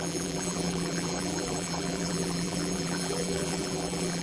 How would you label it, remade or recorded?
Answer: remade